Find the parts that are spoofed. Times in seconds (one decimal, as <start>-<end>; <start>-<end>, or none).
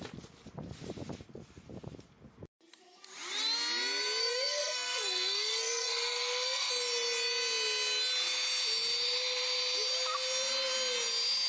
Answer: 4.2-6.7